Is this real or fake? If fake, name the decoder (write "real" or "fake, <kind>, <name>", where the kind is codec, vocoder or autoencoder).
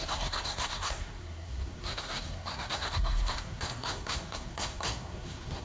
fake, codec, SNAC